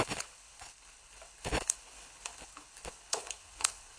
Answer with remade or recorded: remade